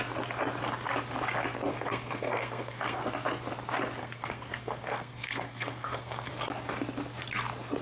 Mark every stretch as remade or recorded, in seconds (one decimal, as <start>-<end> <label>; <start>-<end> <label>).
0.0-1.7 recorded; 1.7-3.0 remade; 3.0-4.0 recorded; 4.0-6.3 remade; 6.3-7.8 recorded